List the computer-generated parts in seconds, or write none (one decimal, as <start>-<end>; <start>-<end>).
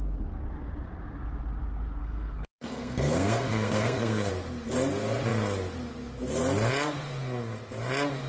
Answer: 2.0-4.3